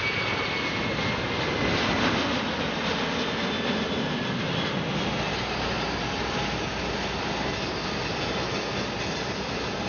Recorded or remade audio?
recorded